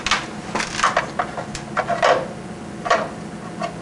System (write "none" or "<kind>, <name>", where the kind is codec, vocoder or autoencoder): none